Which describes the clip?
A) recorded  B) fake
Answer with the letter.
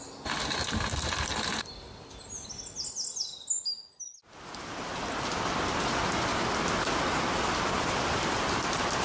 A